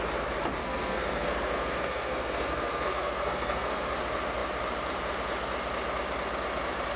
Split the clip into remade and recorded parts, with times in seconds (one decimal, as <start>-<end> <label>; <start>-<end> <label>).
0.0-0.6 recorded; 0.6-3.8 remade; 3.8-7.0 recorded